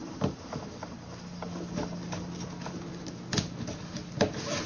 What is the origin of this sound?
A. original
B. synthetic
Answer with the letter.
A